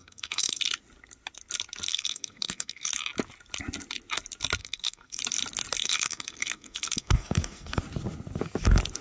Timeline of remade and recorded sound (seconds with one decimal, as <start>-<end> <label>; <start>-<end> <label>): 0.0-0.6 remade; 0.6-1.9 recorded; 1.9-2.9 remade; 2.9-4.6 recorded; 4.6-5.2 remade; 5.2-5.8 recorded; 5.8-7.8 remade; 7.8-9.0 recorded